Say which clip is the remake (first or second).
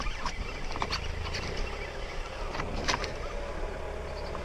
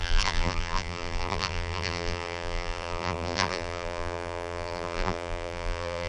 second